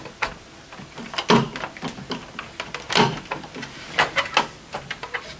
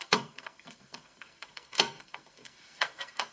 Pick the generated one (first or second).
second